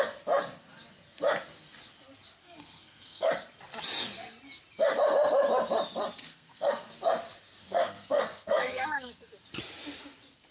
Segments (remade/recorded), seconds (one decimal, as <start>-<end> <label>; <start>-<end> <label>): 0.0-2.4 recorded; 2.4-3.3 remade; 3.3-6.3 recorded; 6.3-6.9 remade; 6.9-7.7 recorded; 7.7-9.3 remade; 9.3-10.5 recorded